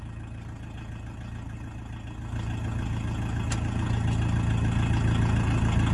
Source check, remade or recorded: recorded